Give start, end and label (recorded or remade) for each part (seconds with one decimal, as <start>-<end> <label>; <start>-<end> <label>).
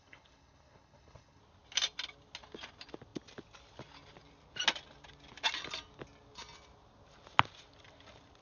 0.0-1.4 remade; 1.4-8.4 recorded